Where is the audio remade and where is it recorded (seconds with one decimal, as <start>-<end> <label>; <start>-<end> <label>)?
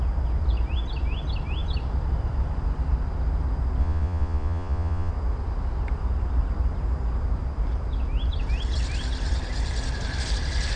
0.0-3.8 recorded; 3.8-5.1 remade; 5.1-10.8 recorded